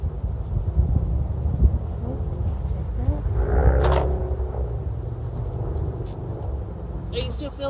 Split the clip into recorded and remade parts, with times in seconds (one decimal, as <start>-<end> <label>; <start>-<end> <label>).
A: 0.0-7.7 recorded